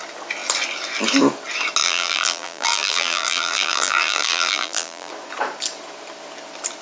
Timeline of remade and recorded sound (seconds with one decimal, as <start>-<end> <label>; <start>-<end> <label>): 0.0-1.8 recorded; 1.8-5.1 remade; 5.1-6.8 recorded